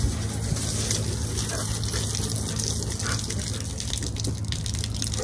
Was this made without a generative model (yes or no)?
yes